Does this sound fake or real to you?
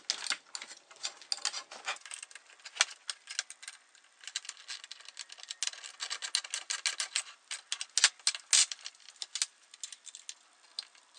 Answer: real